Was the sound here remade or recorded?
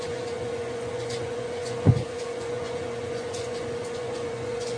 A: remade